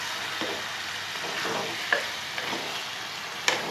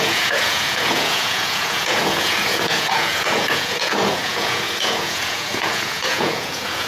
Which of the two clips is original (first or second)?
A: first